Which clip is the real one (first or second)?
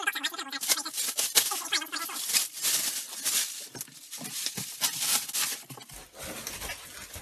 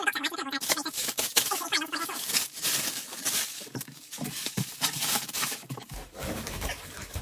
first